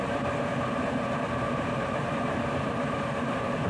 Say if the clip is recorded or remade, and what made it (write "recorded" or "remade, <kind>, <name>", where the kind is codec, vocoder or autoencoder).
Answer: remade, vocoder, BigVGAN v2